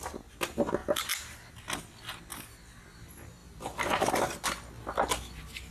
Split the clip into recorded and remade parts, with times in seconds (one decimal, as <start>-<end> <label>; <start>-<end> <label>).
0.0-3.4 recorded; 3.4-4.1 remade; 4.1-5.7 recorded

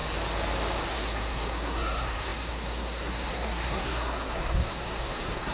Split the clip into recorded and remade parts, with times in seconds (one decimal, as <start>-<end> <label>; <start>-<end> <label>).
0.0-0.9 recorded; 0.9-5.5 remade

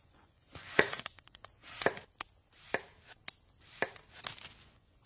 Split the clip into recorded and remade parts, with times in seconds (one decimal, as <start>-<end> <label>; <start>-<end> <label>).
0.0-1.5 remade; 1.5-4.6 recorded; 4.6-5.1 remade

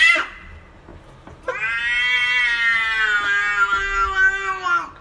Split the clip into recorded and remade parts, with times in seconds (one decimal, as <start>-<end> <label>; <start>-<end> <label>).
0.0-5.0 recorded

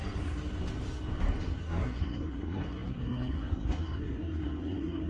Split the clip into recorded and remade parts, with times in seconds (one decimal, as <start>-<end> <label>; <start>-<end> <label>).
0.0-1.6 recorded; 1.6-5.1 remade